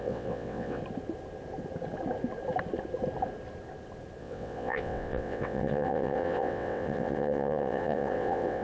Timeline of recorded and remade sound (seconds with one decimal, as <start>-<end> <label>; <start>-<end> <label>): 0.0-0.8 remade; 0.8-4.2 recorded; 4.2-8.6 remade